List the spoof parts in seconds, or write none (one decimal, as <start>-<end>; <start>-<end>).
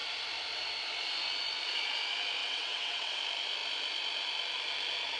2.4-3.2